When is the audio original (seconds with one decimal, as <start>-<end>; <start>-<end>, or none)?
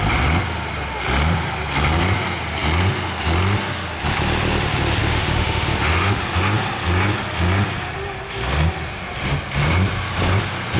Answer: 0.0-5.0; 6.2-10.8